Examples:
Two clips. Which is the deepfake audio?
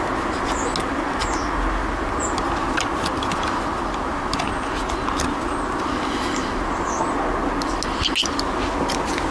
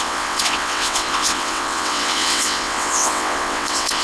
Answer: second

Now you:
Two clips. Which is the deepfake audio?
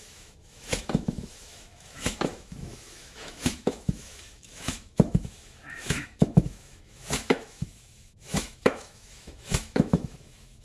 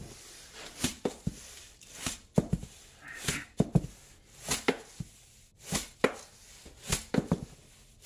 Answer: first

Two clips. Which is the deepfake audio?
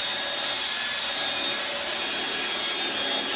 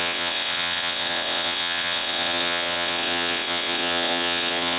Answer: second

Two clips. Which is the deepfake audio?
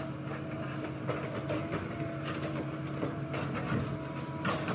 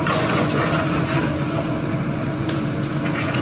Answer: second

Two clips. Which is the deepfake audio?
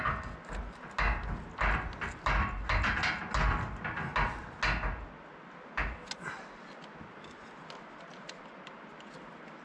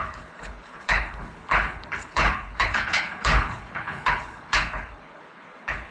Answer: second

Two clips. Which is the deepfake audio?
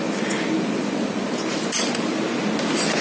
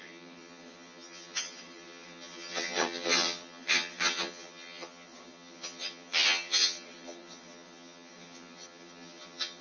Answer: second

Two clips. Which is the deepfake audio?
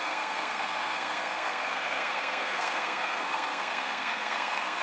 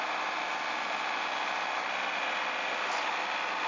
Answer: first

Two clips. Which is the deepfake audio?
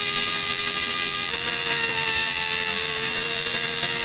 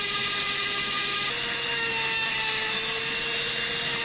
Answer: first